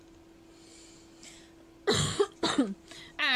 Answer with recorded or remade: recorded